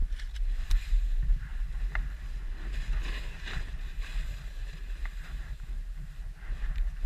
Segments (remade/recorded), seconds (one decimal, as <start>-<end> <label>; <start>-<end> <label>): 0.0-3.3 recorded; 3.3-4.1 remade; 4.1-4.8 recorded; 4.8-7.1 remade